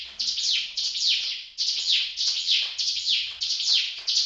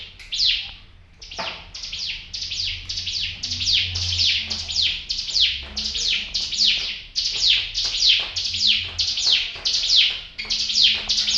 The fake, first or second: first